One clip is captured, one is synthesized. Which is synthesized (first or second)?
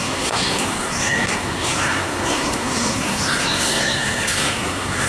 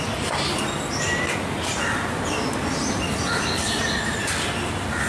first